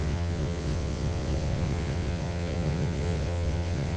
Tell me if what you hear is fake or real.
fake